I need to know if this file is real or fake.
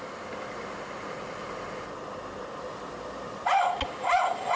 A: real